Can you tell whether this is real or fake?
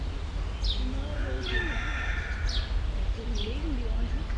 real